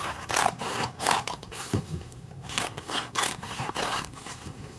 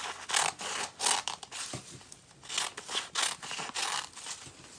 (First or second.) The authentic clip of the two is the second